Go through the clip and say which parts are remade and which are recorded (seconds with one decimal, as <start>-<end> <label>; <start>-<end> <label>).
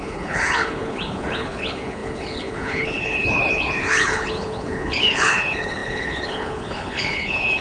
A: 0.0-7.6 remade